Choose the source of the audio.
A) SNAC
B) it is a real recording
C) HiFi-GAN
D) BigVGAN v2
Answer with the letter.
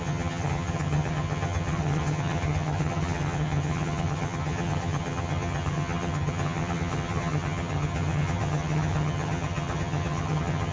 C